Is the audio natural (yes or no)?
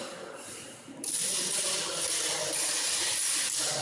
yes